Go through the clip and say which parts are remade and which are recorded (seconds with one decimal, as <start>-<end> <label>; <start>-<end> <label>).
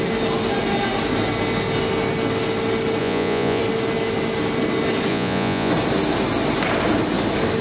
0.0-3.0 recorded; 3.0-3.6 remade; 3.6-5.1 recorded; 5.1-5.7 remade; 5.7-7.6 recorded